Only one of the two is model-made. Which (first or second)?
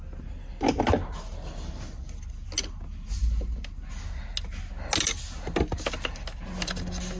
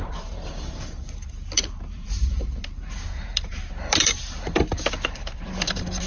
second